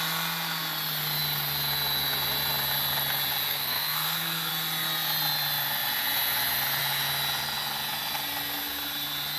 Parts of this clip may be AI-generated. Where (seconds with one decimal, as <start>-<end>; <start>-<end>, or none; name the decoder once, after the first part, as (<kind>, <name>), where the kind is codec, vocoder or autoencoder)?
3.5-4.5 (codec, SNAC)